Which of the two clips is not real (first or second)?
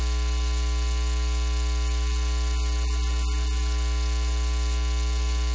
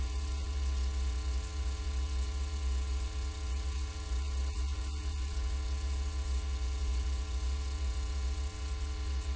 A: second